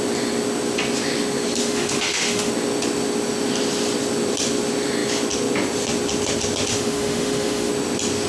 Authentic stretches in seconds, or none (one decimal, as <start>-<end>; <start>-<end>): 0.0-1.6; 2.5-6.7; 7.7-8.3